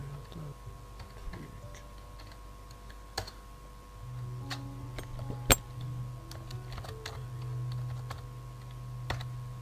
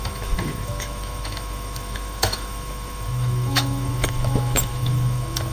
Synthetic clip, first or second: second